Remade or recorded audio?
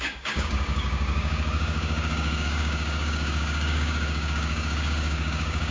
remade